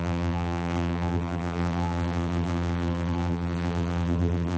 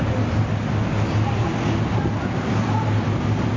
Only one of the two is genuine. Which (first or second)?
second